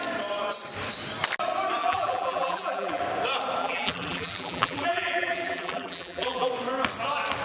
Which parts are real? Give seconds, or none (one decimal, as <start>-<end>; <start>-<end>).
0.0-1.8; 3.0-3.6; 6.5-7.4